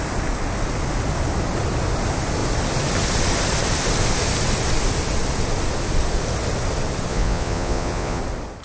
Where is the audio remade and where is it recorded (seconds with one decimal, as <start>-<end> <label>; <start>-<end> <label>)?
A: 0.0-7.1 recorded; 7.1-8.2 remade; 8.2-8.6 recorded